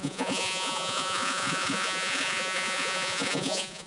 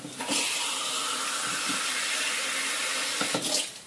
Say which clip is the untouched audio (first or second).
second